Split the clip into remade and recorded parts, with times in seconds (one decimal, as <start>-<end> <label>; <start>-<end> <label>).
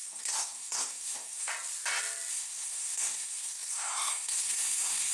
0.0-1.5 remade; 1.5-2.3 recorded; 2.3-5.1 remade